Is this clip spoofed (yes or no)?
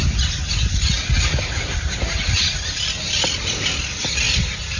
no